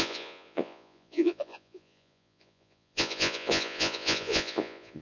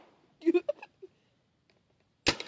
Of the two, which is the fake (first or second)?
first